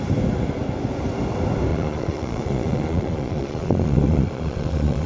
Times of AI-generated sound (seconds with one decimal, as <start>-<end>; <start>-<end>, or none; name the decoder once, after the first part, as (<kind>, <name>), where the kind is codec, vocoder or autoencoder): 1.7-5.1 (vocoder, Vocos)